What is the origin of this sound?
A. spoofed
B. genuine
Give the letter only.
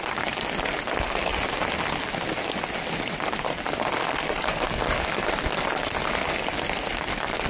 B